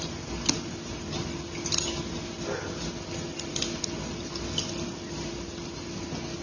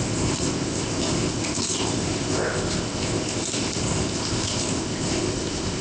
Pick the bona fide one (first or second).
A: first